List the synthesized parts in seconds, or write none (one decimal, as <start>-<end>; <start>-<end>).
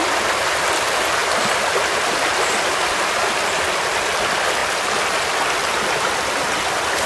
none